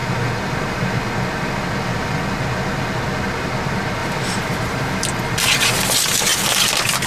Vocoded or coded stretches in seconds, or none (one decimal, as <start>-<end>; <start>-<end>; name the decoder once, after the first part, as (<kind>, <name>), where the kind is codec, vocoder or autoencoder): 4.0-5.0 (vocoder, BigVGAN v2)